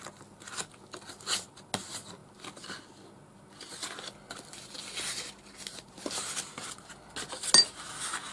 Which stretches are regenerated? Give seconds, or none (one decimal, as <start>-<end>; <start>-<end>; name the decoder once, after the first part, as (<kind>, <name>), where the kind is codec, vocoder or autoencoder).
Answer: none